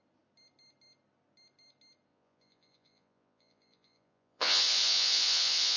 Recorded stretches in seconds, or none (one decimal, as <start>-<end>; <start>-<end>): 0.0-2.1